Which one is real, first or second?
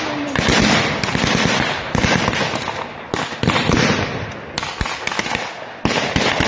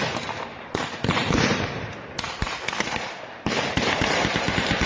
first